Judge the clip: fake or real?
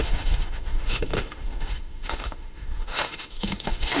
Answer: fake